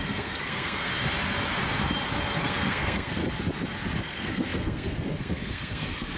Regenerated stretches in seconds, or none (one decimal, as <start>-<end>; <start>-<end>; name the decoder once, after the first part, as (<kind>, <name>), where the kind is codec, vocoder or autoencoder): 0.0-0.9 (codec, SNAC); 2.4-3.2; 4.0-6.2